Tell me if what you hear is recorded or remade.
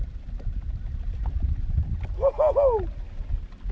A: recorded